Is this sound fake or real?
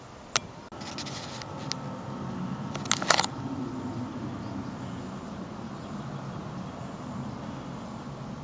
real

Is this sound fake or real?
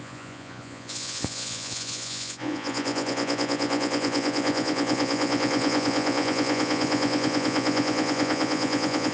fake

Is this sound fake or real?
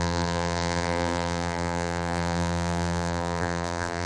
fake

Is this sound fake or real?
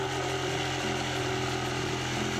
real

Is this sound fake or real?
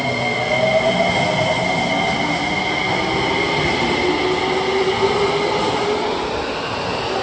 real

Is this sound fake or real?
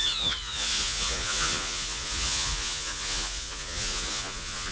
fake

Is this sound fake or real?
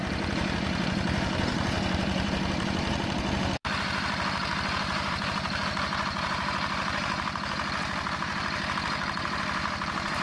fake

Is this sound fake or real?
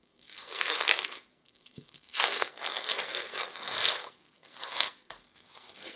fake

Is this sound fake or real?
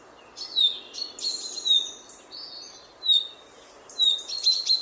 real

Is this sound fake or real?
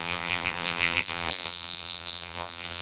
fake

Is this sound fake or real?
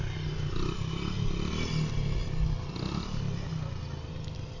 real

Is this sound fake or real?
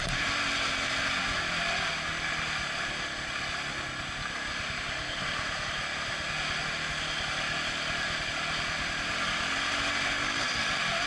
real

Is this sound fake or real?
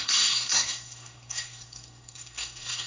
fake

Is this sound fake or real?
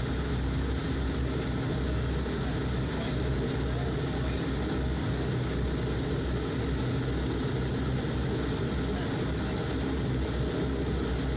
real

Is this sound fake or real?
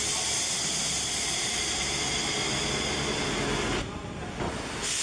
real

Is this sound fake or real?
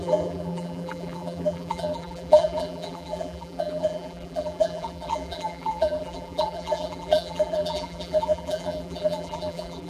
fake